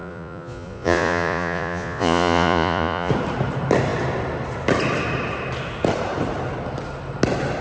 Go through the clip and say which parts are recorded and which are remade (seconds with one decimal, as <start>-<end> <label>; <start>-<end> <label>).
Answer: 0.0-3.1 remade; 3.1-7.6 recorded